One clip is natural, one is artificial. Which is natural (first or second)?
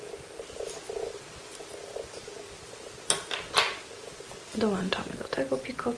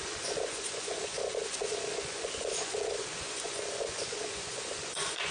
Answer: first